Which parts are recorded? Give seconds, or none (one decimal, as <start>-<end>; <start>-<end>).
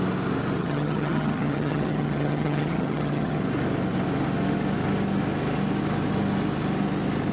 0.0-0.6; 3.4-7.3